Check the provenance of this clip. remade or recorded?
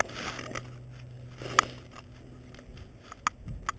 recorded